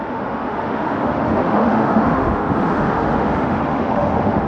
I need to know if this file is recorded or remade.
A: remade